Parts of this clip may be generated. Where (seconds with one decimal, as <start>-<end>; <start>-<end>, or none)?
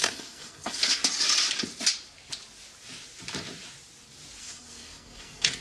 0.0-1.0; 4.4-5.6